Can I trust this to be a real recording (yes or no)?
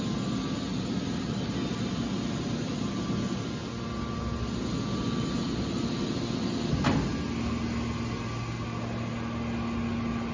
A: yes